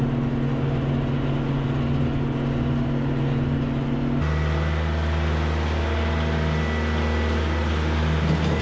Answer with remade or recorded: recorded